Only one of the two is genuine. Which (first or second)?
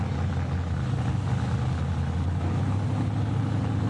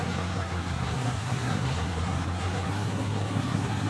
first